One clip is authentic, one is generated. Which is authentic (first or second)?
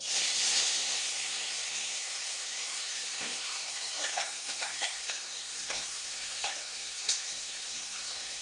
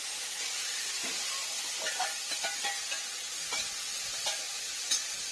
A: second